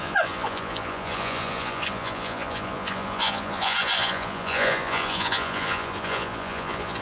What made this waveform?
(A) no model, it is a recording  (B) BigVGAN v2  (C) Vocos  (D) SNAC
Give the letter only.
C